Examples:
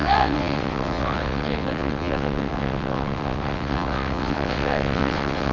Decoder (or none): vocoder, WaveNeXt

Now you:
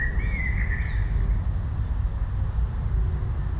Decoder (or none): none